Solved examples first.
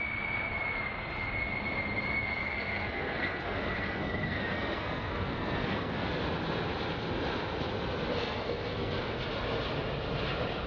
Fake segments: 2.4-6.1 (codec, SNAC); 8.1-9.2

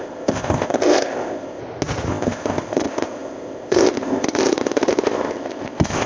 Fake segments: 0.0-1.6 (codec, ZipCodec); 2.1-6.1